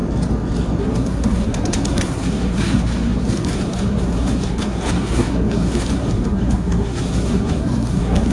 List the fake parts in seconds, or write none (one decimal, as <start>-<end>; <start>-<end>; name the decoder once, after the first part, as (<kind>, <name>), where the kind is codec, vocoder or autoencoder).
0.8-8.3 (codec, SNAC)